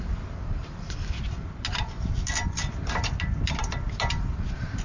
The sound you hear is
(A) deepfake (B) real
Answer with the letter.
B